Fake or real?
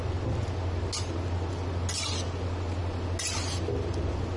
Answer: real